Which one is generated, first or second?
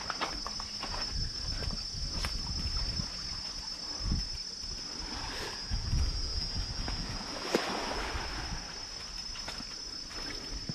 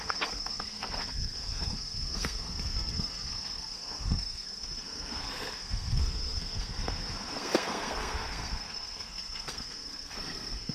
second